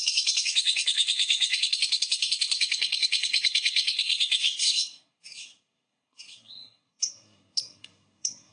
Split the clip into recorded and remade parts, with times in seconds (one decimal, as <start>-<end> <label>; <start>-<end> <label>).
0.0-8.5 remade

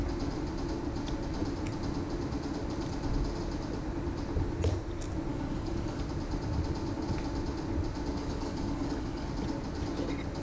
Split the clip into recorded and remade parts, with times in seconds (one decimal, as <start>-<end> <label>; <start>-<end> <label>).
0.0-5.3 recorded; 5.3-6.0 remade; 6.0-8.2 recorded; 8.2-9.3 remade; 9.3-10.4 recorded

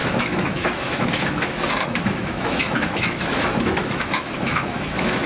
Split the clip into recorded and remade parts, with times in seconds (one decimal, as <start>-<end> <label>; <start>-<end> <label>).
0.0-5.3 remade

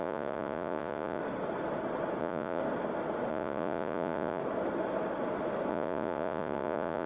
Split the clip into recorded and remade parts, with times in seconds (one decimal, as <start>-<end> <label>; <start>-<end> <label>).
0.0-1.2 remade; 1.2-2.2 recorded; 2.2-2.6 remade; 2.6-3.3 recorded; 3.3-4.4 remade; 4.4-5.7 recorded; 5.7-7.1 remade

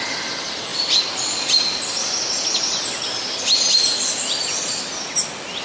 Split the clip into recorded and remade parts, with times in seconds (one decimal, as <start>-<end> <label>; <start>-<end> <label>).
0.0-5.6 recorded